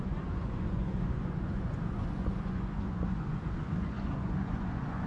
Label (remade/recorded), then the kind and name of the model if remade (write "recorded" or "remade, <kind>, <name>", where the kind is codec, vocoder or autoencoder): remade, vocoder, Vocos